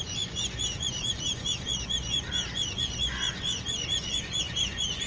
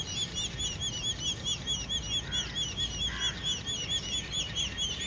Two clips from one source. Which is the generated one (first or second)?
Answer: first